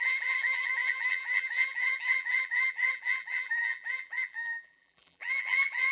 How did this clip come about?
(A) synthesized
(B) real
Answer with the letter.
A